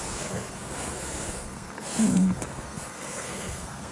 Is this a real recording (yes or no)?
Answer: no